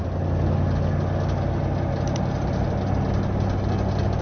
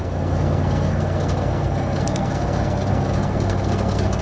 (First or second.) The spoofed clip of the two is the second